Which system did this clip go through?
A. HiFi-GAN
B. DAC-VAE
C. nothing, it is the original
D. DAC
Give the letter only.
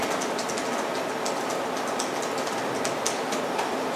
C